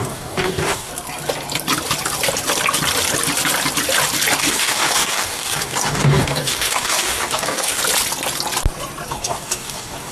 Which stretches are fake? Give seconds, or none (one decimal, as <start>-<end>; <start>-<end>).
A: 0.0-0.9; 4.4-7.8; 9.1-10.1